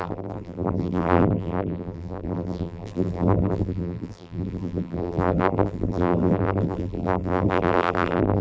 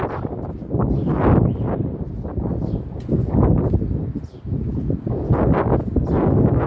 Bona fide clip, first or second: second